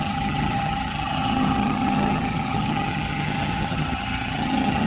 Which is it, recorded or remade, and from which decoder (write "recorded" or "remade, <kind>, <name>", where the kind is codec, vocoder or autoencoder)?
remade, vocoder, HiFi-GAN